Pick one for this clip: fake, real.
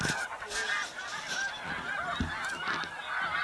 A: real